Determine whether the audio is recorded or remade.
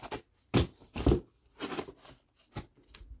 recorded